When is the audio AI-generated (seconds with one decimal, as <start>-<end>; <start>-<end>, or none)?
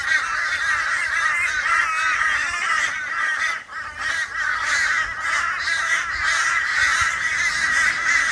none